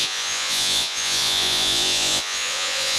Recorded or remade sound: remade